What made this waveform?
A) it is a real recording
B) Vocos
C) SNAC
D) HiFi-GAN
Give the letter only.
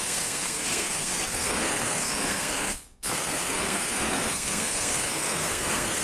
C